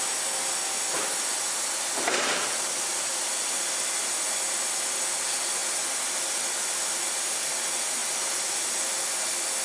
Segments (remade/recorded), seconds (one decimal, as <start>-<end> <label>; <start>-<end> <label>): 0.0-2.9 recorded; 2.9-3.7 remade; 3.7-9.6 recorded